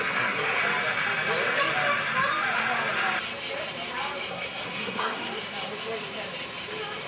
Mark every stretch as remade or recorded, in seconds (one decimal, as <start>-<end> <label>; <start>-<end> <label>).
0.0-0.6 remade; 0.6-4.3 recorded; 4.3-5.2 remade; 5.2-7.1 recorded

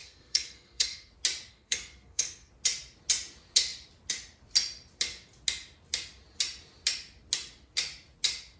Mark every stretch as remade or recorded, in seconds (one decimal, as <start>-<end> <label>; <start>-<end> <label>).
0.0-1.1 remade; 1.1-1.5 recorded; 1.5-2.5 remade; 2.5-8.6 recorded

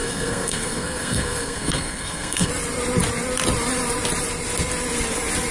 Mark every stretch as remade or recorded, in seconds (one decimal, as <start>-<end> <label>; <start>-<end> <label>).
0.0-2.5 remade; 2.5-5.5 recorded

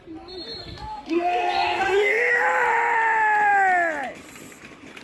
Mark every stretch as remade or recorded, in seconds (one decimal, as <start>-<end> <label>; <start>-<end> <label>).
0.0-0.6 recorded; 0.6-2.3 remade; 2.3-5.0 recorded

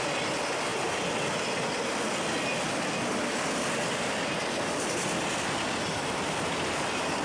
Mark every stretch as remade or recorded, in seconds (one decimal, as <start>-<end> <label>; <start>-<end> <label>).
0.0-7.2 recorded